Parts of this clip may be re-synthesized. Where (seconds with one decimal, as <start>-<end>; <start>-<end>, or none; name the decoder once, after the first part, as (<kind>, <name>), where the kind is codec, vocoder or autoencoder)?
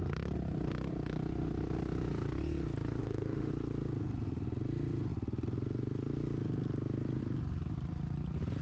3.0-3.5 (autoencoder, DAC-VAE)